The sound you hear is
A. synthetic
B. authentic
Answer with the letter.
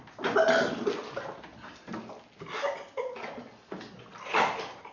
B